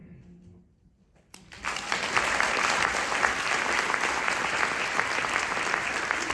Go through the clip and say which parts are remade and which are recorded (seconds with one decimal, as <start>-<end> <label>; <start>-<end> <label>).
0.0-6.3 recorded